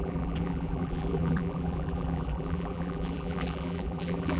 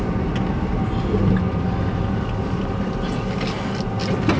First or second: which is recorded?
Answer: second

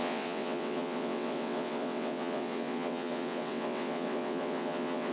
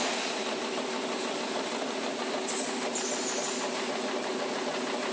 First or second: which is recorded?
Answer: second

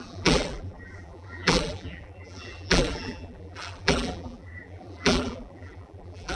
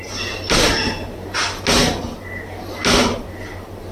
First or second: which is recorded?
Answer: second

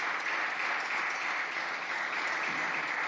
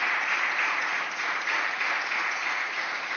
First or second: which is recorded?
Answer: first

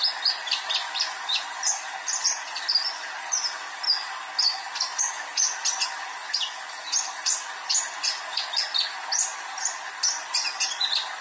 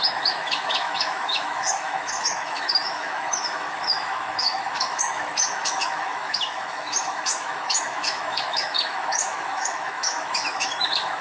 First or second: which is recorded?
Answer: first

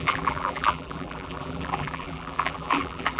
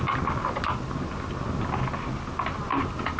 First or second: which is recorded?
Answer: second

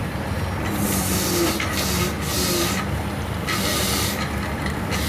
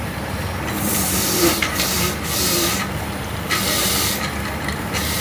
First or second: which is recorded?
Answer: first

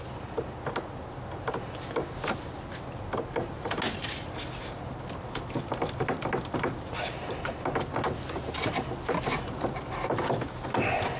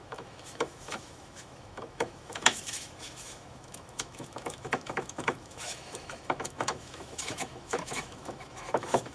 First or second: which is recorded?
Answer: first